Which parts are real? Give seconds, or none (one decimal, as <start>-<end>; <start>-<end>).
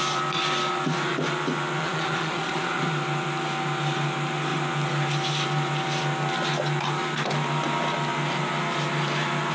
0.0-1.8; 2.8-9.5